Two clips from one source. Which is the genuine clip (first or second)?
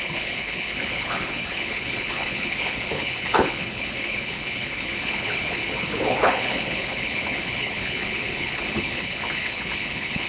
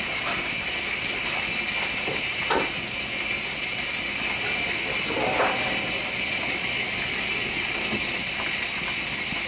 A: second